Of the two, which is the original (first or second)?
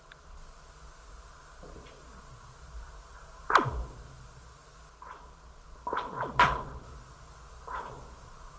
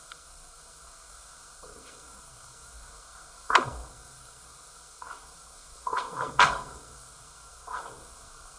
first